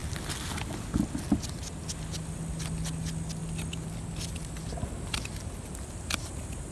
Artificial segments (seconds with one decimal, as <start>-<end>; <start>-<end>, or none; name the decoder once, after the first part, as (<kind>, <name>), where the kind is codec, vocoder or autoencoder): none